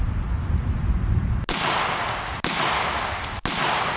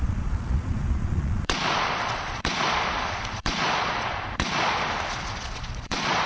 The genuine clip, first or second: first